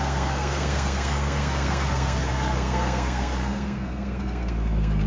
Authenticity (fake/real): fake